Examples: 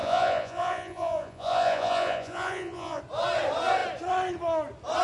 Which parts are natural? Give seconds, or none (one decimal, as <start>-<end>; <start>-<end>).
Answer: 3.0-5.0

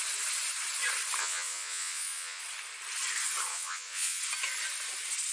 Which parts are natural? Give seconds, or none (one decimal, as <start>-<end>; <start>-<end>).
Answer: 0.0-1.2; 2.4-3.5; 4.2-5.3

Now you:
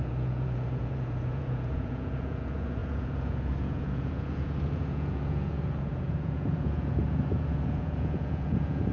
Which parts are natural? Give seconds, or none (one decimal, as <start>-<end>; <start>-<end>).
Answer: none